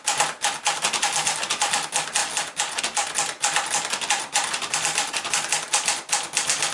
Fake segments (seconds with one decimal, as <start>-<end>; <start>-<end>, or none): none